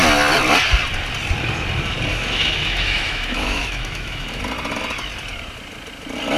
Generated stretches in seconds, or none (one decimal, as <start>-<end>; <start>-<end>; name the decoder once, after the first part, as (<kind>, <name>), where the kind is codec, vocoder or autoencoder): 2.1-4.4 (autoencoder, DAC-VAE)